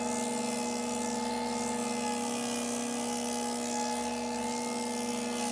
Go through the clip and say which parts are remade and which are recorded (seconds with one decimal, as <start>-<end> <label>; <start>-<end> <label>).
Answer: 0.0-5.5 recorded